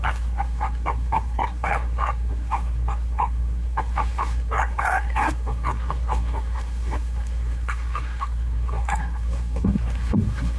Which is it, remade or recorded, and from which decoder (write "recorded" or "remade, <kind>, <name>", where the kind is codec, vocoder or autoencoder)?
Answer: remade, codec, SNAC